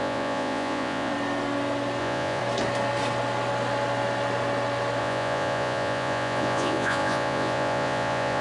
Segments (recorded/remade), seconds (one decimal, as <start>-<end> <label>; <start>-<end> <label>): 0.0-1.1 remade; 1.1-2.0 recorded; 2.0-2.4 remade; 2.4-5.0 recorded; 5.0-8.4 remade